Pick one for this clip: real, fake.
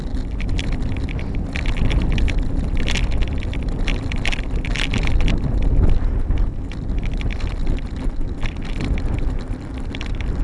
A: fake